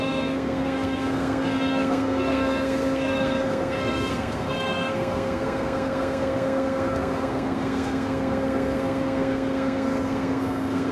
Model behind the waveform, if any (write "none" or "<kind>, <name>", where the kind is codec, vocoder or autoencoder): codec, SNAC